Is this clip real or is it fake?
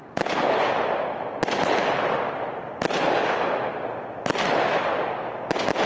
real